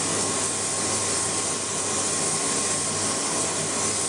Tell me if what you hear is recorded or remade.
recorded